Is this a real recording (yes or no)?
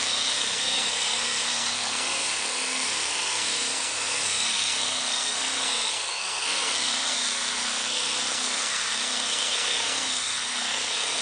no